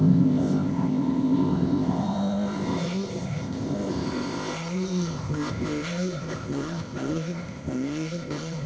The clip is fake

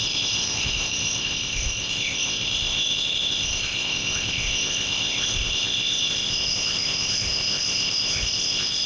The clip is fake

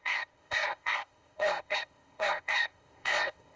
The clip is fake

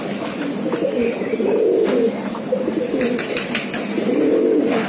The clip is real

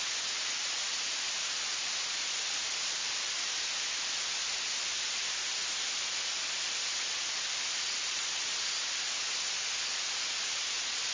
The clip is real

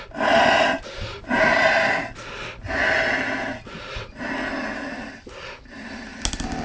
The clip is real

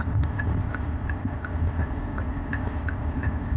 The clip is fake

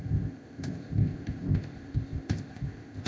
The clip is fake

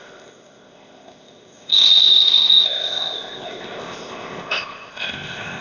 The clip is fake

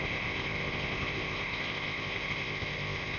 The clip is fake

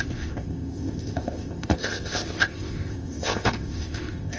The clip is fake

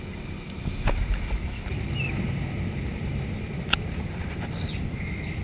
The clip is real